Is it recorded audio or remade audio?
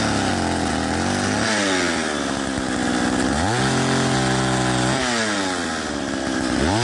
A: recorded